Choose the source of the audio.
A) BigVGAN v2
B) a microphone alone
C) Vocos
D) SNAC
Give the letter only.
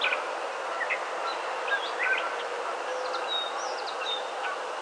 B